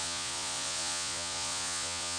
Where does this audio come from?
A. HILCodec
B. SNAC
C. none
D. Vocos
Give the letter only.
D